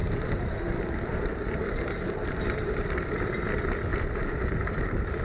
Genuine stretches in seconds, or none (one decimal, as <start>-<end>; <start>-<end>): 3.1-3.9